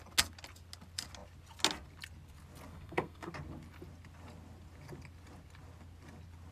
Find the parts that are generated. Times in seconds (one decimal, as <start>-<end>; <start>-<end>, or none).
2.7-3.3